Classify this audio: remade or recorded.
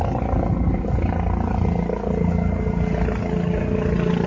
recorded